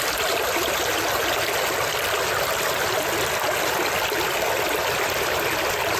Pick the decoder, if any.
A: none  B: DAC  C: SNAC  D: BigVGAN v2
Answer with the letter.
A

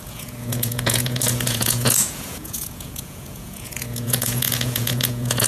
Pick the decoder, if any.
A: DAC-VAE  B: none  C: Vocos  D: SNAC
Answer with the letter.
C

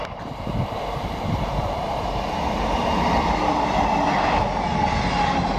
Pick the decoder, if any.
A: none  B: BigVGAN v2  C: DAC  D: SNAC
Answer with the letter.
B